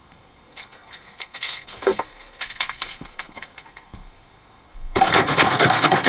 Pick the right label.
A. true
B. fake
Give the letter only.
B